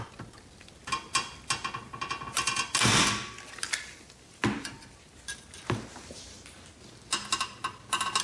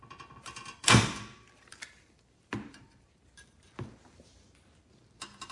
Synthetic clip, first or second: second